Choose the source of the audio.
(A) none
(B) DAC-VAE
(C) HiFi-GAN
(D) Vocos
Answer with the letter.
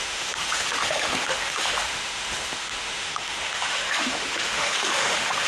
B